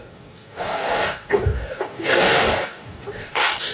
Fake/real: fake